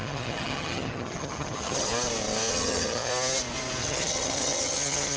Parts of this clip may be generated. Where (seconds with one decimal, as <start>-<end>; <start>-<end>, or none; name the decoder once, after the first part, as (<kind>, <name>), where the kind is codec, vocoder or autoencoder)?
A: 0.0-1.9 (vocoder, HiFi-GAN); 2.5-3.1; 3.8-5.2